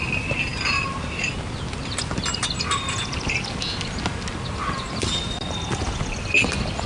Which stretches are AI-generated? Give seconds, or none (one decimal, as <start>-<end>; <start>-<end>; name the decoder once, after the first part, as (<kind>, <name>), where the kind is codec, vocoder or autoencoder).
none